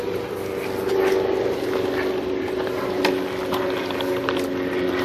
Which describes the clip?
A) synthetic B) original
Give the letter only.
B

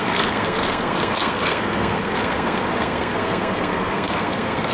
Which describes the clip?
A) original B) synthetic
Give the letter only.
B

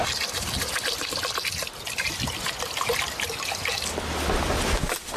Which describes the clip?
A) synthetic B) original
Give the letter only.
B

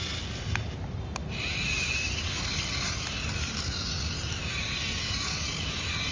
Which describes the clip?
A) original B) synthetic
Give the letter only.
A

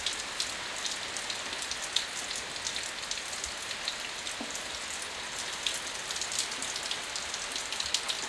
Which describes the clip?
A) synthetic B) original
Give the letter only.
B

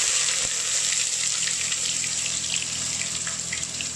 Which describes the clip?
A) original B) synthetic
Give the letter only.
B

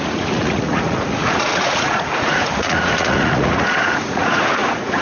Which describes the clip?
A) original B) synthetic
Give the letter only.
B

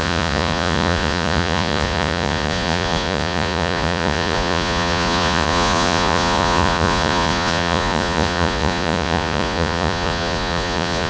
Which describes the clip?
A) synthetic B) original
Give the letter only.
A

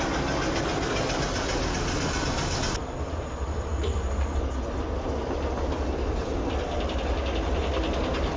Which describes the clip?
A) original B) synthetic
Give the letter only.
A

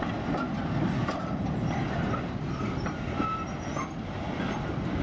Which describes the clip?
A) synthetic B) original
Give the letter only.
B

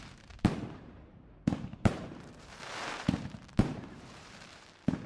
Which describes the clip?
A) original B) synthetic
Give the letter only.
B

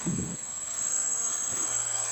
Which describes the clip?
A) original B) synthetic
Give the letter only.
B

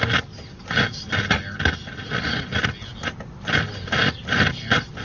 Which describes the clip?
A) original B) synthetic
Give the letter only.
A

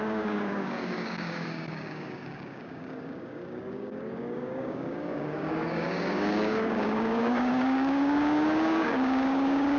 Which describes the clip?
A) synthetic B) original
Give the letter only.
A